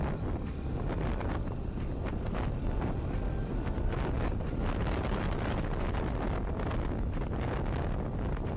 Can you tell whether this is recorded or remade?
recorded